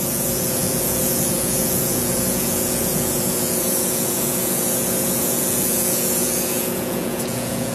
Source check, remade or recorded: remade